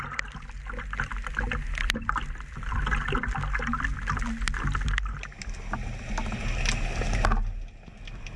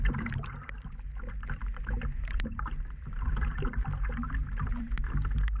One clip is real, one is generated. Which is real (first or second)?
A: first